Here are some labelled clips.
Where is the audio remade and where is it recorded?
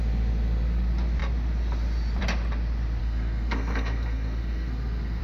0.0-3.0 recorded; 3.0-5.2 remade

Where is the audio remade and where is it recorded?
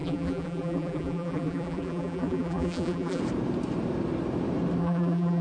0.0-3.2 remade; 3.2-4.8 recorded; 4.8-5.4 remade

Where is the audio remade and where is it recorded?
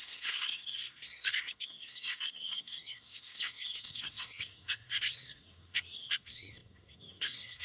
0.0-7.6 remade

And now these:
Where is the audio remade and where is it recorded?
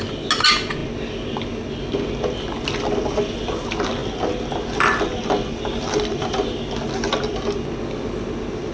0.0-8.7 recorded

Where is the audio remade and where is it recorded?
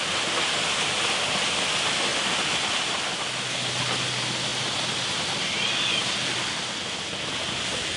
0.0-8.0 recorded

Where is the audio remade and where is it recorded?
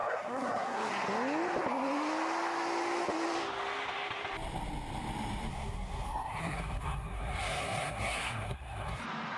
0.0-0.9 remade; 0.9-5.5 recorded; 5.5-9.0 remade; 9.0-9.4 recorded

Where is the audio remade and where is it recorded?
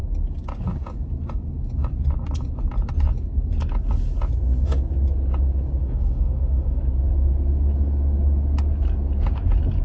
0.0-5.8 recorded; 5.8-6.8 remade; 6.8-9.8 recorded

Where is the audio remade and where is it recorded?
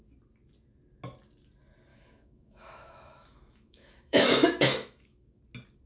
0.0-1.9 recorded; 1.9-5.4 remade; 5.4-5.9 recorded